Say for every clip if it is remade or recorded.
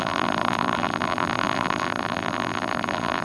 remade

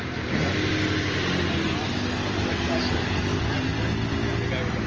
recorded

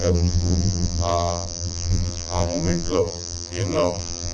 remade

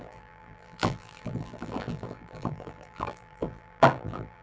remade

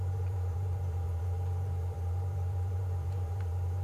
remade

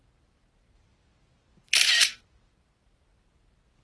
remade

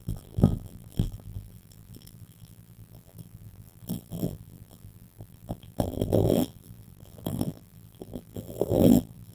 remade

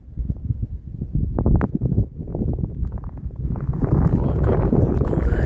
recorded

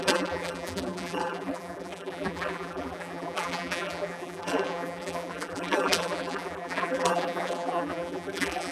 remade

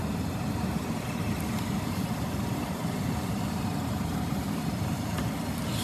remade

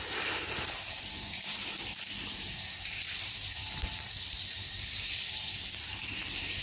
remade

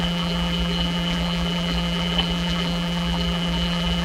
remade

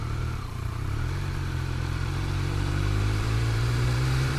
remade